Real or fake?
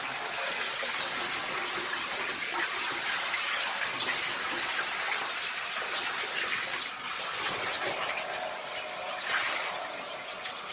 real